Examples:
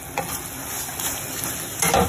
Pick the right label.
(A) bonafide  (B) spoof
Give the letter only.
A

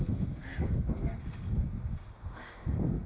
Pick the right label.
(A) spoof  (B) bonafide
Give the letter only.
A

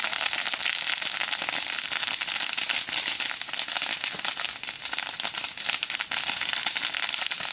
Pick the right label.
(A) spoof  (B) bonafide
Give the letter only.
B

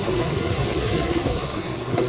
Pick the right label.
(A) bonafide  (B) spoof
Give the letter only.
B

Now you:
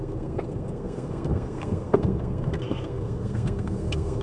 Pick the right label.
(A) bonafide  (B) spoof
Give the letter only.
B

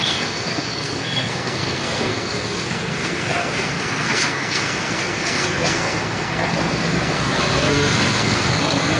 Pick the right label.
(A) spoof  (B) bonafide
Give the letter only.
A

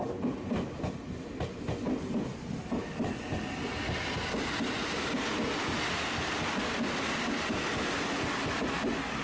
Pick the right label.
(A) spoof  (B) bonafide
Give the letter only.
B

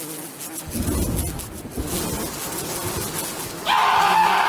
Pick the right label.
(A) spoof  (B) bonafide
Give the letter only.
B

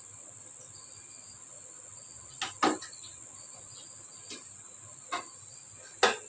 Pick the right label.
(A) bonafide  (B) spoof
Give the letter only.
A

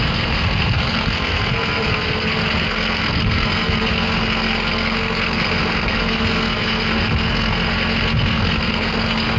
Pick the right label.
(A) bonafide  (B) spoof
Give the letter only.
B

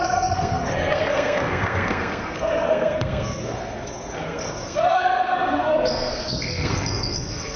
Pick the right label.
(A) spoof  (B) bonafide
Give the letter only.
A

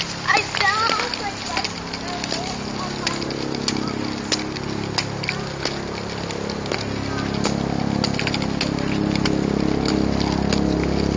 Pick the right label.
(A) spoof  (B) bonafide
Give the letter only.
B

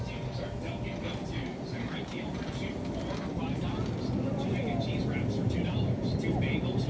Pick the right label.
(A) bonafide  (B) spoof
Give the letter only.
A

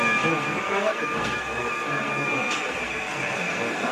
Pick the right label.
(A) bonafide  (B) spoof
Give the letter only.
B